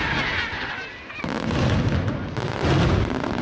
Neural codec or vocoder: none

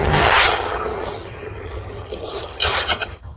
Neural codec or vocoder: vocoder, HiFi-GAN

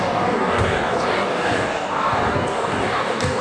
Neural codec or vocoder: codec, DAC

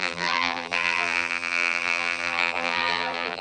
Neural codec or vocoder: vocoder, BigVGAN v2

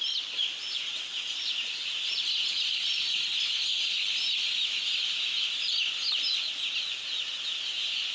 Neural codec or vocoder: none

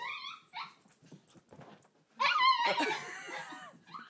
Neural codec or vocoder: none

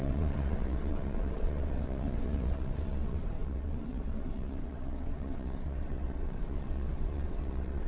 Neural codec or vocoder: vocoder, WaveNeXt